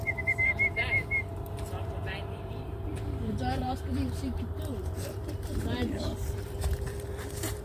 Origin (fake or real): fake